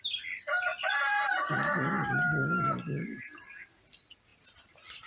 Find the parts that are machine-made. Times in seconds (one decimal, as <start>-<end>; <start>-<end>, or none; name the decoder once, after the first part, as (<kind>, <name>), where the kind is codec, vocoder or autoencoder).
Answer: 0.7-1.5 (vocoder, BigVGAN v2); 2.3-3.2